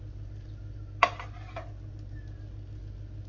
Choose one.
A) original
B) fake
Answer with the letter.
A